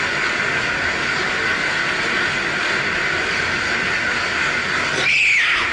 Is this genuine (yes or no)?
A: yes